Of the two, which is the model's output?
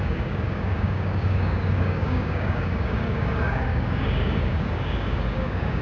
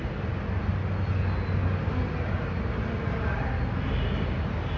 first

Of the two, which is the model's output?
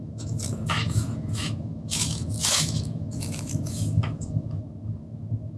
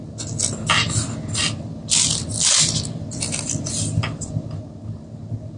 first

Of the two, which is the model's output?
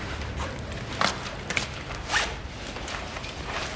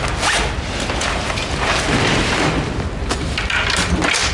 first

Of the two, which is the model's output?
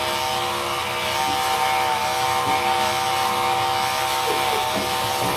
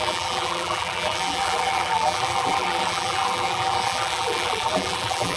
second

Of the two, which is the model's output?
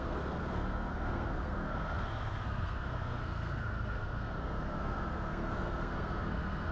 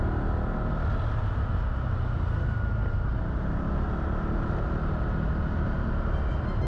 first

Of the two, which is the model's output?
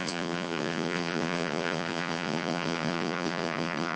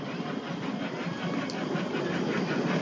first